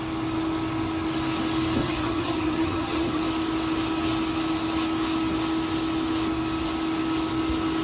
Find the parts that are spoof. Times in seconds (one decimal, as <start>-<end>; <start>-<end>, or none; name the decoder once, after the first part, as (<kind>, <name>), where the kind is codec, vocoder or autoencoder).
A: 1.8-3.2 (vocoder, HiFi-GAN)

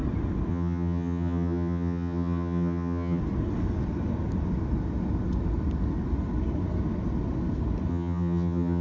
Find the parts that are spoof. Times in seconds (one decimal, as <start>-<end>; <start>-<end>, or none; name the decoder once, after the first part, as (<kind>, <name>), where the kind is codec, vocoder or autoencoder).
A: 0.5-3.2 (vocoder, HiFi-GAN); 7.9-8.8

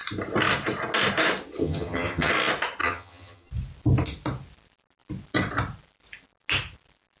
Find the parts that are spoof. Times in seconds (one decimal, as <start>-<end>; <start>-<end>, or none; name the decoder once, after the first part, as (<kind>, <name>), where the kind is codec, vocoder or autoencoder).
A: 1.6-2.3 (vocoder, HiFi-GAN); 2.8-3.5